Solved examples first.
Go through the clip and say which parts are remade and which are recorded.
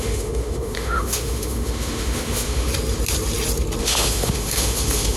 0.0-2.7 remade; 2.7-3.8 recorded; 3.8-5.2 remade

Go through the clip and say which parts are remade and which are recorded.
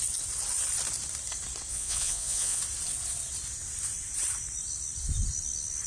0.0-1.7 recorded; 1.7-2.6 remade; 2.6-5.9 recorded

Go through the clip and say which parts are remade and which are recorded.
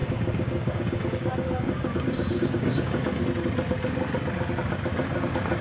0.0-3.2 remade; 3.2-5.6 recorded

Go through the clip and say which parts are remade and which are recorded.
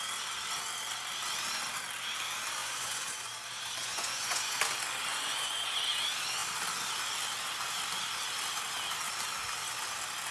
0.0-2.6 recorded; 2.6-3.3 remade; 3.3-3.8 recorded; 3.8-4.6 remade; 4.6-5.1 recorded; 5.1-6.0 remade; 6.0-10.3 recorded